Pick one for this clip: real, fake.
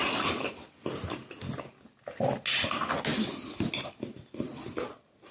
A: real